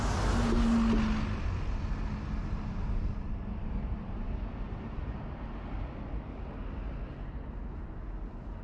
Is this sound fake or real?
real